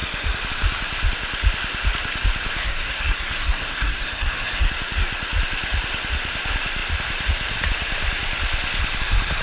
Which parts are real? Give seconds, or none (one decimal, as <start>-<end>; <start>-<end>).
0.0-2.6; 4.7-9.4